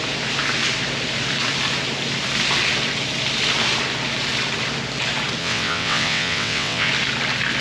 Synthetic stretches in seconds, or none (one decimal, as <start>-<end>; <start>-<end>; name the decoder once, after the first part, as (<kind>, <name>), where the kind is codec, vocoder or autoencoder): 5.4-6.9 (vocoder, WaveNeXt)

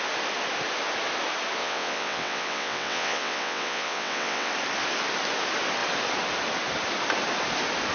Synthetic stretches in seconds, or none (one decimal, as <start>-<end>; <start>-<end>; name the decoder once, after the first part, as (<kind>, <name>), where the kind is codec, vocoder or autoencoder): 1.6-4.5 (vocoder, WaveNeXt)

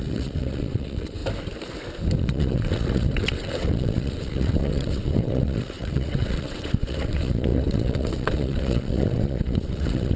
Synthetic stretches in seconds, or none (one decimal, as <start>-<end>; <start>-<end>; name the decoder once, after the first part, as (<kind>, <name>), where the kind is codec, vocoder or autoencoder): 0.0-1.2 (vocoder, WaveNeXt); 2.2-10.2

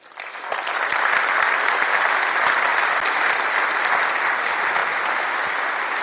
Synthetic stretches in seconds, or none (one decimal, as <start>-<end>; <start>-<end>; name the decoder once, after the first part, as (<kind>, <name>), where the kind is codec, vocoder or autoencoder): none

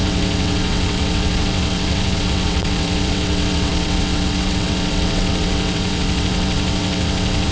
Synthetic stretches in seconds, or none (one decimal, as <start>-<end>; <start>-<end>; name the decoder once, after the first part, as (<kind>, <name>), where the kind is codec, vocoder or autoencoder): 0.0-7.5 (vocoder, WaveNeXt)

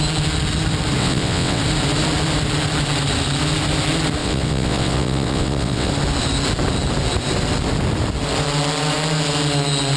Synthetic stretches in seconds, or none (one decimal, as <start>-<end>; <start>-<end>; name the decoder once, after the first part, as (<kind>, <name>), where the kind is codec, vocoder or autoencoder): 1.0-1.6 (vocoder, WaveNeXt); 4.2-5.9

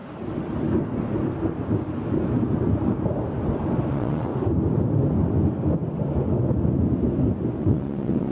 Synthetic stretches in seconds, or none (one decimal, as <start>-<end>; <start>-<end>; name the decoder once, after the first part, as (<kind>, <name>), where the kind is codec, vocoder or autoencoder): 3.9-4.3 (vocoder, WaveNeXt); 7.6-8.3

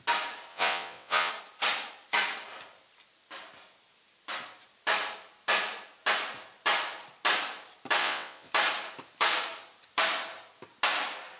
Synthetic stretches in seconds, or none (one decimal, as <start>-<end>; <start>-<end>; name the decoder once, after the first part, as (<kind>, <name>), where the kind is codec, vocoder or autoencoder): 0.5-1.3 (vocoder, WaveNeXt); 8.0-8.5